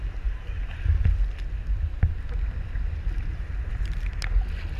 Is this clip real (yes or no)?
yes